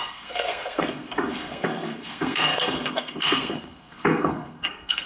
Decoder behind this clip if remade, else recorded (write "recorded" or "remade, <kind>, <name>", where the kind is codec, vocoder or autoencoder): remade, codec, SNAC